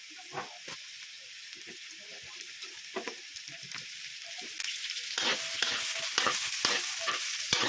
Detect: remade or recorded recorded